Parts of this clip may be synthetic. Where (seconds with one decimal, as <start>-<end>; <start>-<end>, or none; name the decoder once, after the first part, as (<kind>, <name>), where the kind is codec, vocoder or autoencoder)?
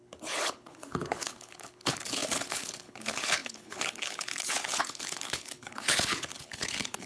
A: 0.0-7.1 (codec, HILCodec)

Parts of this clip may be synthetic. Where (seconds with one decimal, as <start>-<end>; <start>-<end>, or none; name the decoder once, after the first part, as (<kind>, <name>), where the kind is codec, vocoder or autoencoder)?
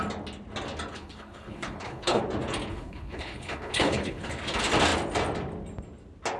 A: 0.9-2.2 (codec, HILCodec); 2.7-4.3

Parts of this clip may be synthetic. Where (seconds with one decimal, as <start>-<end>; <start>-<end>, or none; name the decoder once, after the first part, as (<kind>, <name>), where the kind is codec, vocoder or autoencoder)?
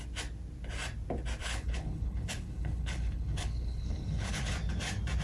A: 1.4-4.5 (codec, HILCodec)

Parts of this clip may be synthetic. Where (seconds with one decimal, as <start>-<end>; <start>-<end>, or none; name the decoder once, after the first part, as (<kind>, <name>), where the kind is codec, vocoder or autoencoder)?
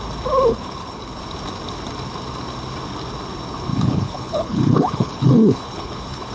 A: 0.5-1.2 (codec, HILCodec); 3.7-6.3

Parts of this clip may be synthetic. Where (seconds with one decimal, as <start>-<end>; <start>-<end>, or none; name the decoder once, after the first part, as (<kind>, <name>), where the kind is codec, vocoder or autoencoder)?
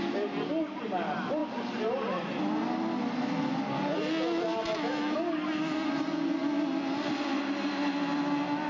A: none